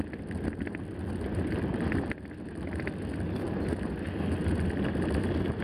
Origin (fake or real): real